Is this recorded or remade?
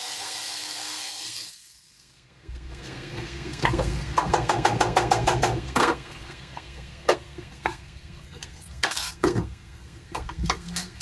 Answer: remade